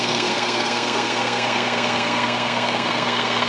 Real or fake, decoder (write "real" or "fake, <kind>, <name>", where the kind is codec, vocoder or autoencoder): fake, codec, SNAC